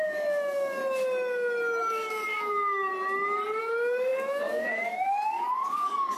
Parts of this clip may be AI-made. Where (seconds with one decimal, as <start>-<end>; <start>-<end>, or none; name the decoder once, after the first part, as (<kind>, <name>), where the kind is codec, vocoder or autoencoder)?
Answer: 0.0-0.8 (codec, DAC); 1.8-2.9; 3.6-6.2